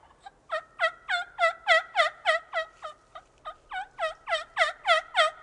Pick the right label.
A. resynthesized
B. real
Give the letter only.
B